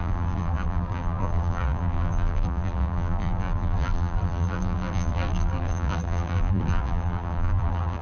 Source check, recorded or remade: remade